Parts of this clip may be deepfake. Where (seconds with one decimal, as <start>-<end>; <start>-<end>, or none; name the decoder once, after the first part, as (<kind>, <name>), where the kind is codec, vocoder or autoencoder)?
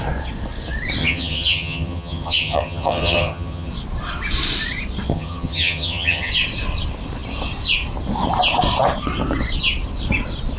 1.0-3.7 (vocoder, HiFi-GAN); 5.1-6.3